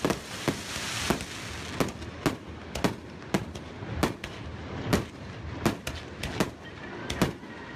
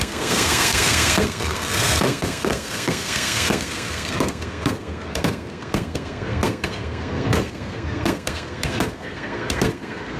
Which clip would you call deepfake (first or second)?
second